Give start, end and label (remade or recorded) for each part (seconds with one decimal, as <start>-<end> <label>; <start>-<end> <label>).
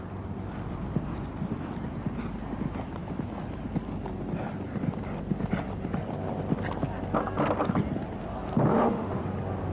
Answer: 0.0-8.7 recorded; 8.7-9.2 remade; 9.2-9.7 recorded